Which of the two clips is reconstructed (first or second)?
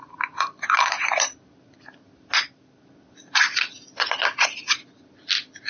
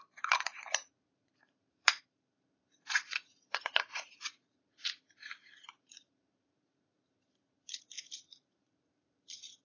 second